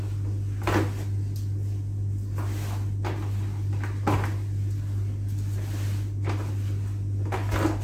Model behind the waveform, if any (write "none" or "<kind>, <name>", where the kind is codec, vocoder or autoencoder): none